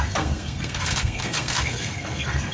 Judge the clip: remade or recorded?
remade